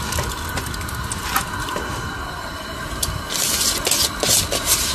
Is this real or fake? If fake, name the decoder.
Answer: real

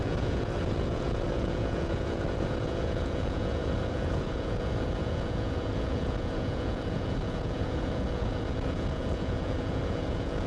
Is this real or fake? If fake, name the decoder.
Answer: fake, vocoder, Vocos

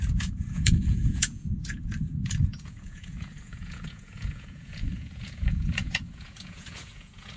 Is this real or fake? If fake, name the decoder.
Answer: fake, vocoder, Vocos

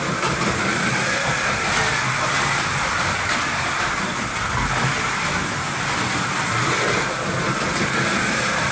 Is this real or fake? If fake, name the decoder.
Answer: real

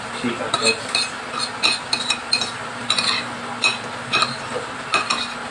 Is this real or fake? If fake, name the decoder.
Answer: real